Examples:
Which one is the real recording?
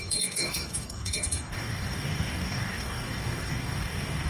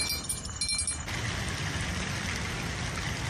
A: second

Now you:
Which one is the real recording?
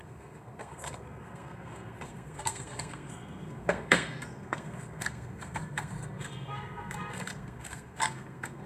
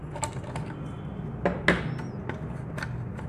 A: second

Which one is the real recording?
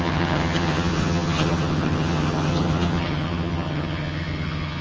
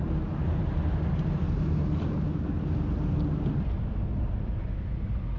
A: second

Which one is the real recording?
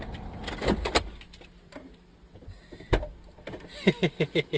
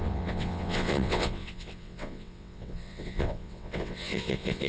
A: first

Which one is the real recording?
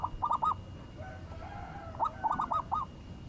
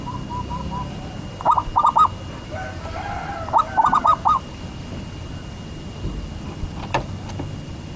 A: first